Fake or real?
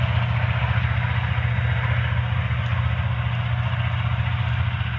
real